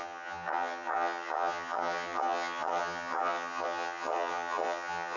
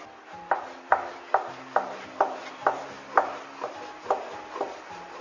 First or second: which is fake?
first